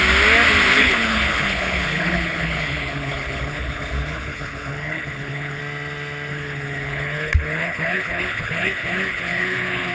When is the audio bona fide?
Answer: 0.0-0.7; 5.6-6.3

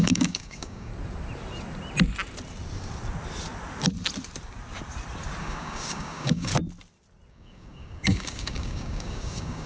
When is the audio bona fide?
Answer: 0.9-5.4; 6.5-7.3

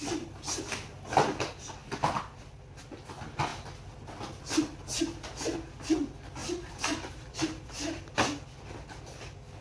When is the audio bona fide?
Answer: 0.0-6.4; 7.1-9.6